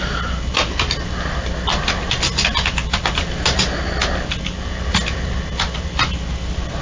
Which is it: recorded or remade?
recorded